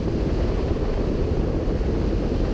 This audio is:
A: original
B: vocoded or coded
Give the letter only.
A